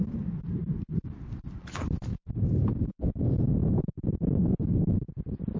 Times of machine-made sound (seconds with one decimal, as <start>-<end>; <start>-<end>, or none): 2.1-2.9